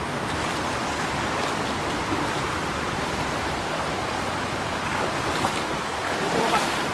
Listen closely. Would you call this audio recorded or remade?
recorded